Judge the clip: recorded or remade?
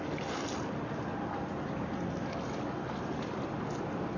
recorded